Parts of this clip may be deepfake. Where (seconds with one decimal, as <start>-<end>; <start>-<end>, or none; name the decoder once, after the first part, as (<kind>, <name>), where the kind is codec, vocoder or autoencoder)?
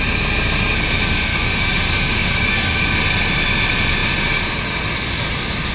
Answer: 1.3-2.8 (codec, DAC)